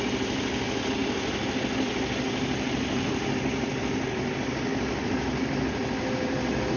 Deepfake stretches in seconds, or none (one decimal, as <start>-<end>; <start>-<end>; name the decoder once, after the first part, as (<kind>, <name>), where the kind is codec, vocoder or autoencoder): none